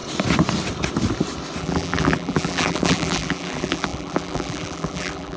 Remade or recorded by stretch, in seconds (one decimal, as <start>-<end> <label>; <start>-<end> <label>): 0.0-1.6 recorded; 1.6-5.4 remade

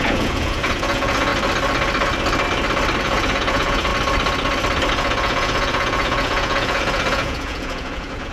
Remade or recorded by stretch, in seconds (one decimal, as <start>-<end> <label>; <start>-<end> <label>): 0.0-1.3 remade; 1.3-3.0 recorded; 3.0-3.9 remade; 3.9-4.9 recorded; 4.9-8.3 remade

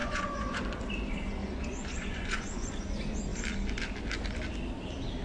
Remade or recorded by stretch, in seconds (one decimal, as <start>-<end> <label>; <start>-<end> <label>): 0.0-0.6 remade; 0.6-1.4 recorded; 1.4-2.7 remade; 2.7-5.2 recorded

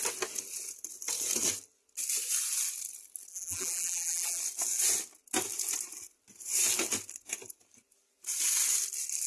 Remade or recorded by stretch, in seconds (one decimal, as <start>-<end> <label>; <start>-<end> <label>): 0.0-3.3 recorded; 3.3-4.4 remade; 4.4-9.3 recorded

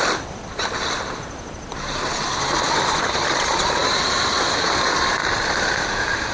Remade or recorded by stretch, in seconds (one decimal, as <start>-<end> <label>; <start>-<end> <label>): 0.0-1.7 remade; 1.7-2.3 recorded; 2.3-6.3 remade

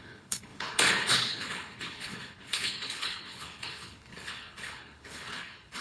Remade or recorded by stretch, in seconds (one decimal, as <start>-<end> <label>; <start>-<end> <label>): 0.0-5.8 remade